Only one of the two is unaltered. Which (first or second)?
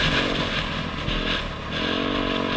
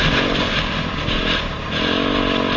first